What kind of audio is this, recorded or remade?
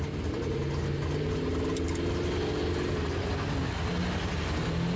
recorded